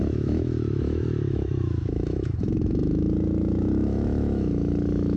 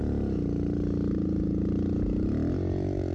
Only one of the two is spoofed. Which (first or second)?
first